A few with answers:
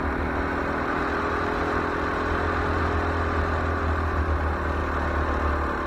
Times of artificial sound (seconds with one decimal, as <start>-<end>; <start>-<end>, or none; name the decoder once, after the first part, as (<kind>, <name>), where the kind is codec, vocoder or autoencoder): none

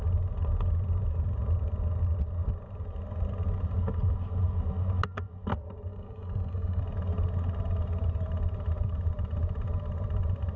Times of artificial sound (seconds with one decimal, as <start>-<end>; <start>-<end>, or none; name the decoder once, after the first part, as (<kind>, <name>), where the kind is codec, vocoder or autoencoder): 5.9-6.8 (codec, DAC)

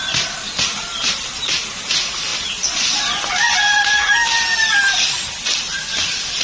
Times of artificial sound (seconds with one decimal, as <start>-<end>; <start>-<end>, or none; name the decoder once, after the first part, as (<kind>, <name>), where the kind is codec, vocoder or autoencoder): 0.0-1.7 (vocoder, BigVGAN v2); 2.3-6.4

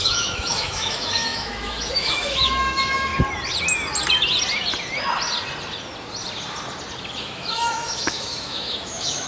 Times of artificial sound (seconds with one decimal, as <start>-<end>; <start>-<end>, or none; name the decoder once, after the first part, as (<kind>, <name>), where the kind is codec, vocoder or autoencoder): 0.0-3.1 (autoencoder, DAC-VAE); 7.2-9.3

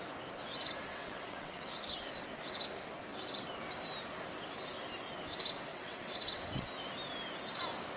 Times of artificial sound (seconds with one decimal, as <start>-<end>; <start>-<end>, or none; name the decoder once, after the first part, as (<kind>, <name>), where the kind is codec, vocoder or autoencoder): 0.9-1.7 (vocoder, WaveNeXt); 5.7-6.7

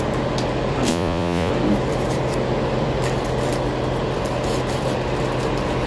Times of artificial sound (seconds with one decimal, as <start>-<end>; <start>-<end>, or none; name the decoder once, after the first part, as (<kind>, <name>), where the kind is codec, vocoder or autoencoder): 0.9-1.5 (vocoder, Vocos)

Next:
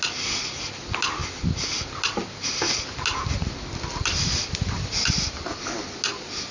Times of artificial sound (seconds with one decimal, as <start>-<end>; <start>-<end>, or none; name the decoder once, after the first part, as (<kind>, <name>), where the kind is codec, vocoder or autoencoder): none